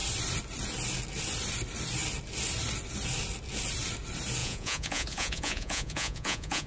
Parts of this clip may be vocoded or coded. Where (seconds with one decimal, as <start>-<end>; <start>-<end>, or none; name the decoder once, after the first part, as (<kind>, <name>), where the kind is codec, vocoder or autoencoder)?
4.4-6.7 (vocoder, Vocos)